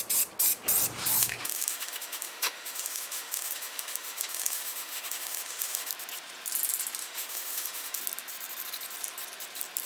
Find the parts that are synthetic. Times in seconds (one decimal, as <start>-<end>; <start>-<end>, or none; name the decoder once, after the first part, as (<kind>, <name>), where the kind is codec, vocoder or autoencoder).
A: 1.2-5.9 (autoencoder, DAC-VAE); 7.0-8.0

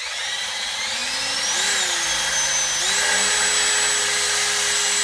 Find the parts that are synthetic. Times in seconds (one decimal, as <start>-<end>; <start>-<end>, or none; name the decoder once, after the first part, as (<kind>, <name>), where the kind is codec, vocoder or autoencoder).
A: none

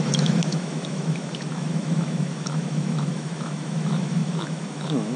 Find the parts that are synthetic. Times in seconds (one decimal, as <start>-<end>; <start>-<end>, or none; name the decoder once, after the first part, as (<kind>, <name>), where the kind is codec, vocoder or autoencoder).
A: 0.0-5.2 (autoencoder, DAC-VAE)

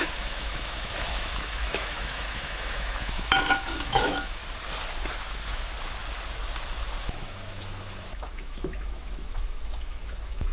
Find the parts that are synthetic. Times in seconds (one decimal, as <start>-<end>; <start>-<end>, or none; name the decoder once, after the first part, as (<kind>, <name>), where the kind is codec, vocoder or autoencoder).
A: 0.0-4.4 (autoencoder, DAC-VAE); 7.0-10.5

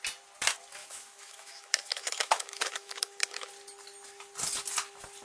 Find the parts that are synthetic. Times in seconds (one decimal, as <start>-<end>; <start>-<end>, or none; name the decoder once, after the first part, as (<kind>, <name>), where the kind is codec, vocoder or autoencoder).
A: 0.8-3.5 (autoencoder, DAC-VAE)